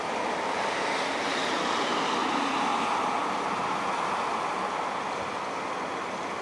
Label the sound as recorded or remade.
recorded